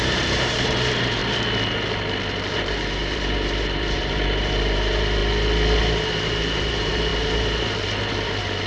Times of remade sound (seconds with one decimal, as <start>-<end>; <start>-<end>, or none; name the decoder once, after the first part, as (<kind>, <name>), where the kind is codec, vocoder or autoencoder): 0.0-1.2 (vocoder, BigVGAN v2); 2.5-5.2; 5.8-8.7